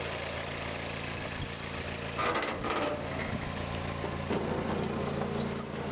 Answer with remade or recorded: recorded